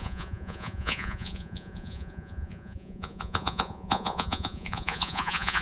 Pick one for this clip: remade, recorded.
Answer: remade